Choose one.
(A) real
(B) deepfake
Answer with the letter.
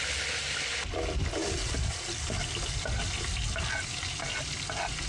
A